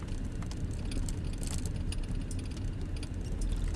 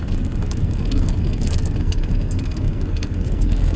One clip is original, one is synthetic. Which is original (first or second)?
first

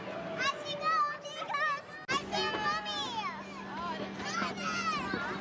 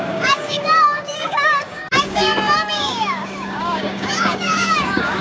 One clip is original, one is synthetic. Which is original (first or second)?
first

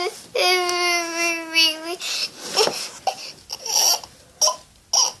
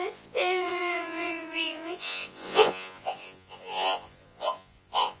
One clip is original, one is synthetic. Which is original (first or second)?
first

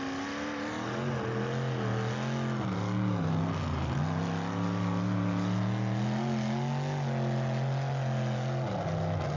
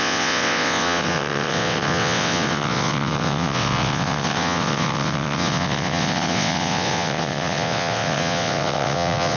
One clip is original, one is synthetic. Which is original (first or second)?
first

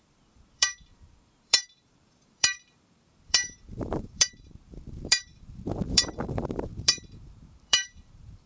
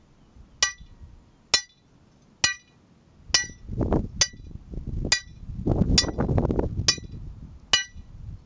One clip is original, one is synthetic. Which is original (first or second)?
second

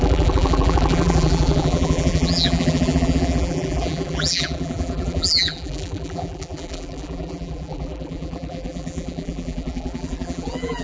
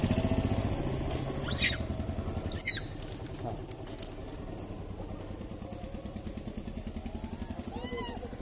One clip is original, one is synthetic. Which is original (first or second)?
second